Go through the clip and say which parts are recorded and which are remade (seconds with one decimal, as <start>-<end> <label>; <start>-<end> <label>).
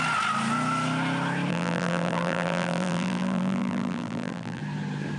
0.0-1.5 recorded; 1.5-4.6 remade; 4.6-5.2 recorded